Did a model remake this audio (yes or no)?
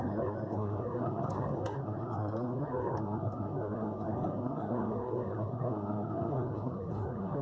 yes